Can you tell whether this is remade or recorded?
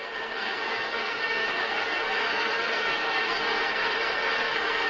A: remade